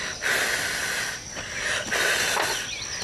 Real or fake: real